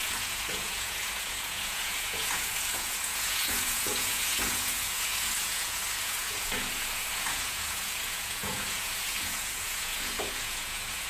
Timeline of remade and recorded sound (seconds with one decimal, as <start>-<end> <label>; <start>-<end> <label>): 0.0-11.1 remade